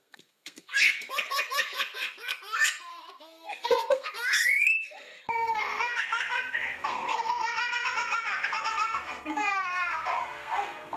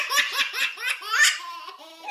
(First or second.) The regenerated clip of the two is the first